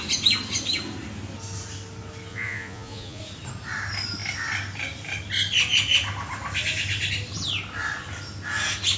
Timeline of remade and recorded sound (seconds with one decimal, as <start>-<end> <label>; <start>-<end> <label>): 0.0-2.3 recorded; 2.3-3.2 remade; 3.2-9.0 recorded